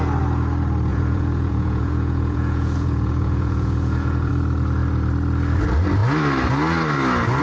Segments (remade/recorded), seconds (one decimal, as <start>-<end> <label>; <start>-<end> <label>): 0.0-0.9 recorded; 0.9-4.3 remade; 4.3-7.4 recorded